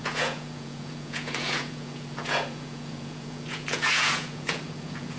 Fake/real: fake